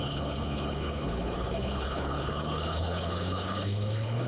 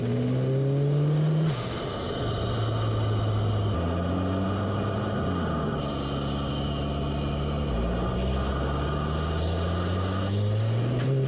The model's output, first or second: first